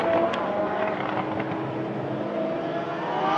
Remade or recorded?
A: recorded